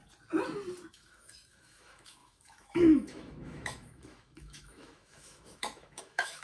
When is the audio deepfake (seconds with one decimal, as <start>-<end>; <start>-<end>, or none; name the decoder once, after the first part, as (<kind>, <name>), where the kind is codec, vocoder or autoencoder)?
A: 0.9-6.4 (autoencoder, DAC-VAE)

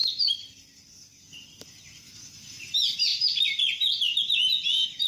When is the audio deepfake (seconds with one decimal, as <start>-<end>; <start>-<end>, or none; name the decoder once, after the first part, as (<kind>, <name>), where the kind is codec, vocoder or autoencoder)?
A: 3.1-3.6 (vocoder, BigVGAN v2)

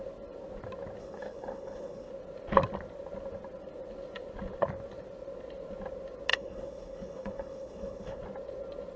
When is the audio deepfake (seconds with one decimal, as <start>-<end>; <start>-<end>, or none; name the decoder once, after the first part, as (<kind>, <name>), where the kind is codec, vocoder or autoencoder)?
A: 1.0-2.1 (codec, HILCodec); 6.3-8.2

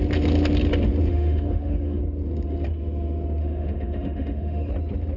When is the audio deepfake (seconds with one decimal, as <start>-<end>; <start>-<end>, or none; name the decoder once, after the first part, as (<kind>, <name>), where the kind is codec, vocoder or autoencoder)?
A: 1.1-2.0 (autoencoder, DAC-VAE); 3.4-4.7

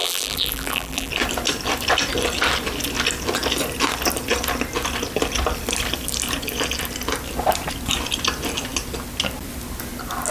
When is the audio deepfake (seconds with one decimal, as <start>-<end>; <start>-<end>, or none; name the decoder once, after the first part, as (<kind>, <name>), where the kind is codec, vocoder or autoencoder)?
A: 0.0-1.1 (vocoder, BigVGAN v2)

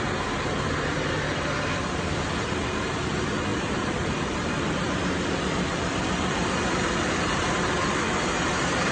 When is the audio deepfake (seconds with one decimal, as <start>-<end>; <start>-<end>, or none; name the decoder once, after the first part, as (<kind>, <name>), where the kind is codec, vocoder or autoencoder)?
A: 3.5-8.0 (vocoder, BigVGAN v2)

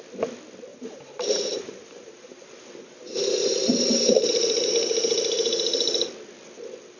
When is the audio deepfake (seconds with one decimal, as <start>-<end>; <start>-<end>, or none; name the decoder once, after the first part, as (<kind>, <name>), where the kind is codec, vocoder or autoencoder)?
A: 0.7-4.7 (vocoder, BigVGAN v2)